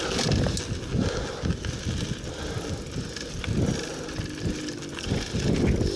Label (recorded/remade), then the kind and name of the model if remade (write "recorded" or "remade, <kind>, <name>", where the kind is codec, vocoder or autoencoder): recorded